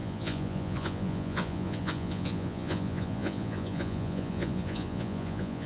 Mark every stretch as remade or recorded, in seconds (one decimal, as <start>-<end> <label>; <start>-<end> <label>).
0.0-5.7 remade